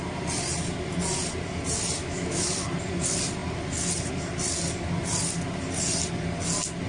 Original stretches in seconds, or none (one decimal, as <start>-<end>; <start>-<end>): 0.0-2.0; 2.5-6.9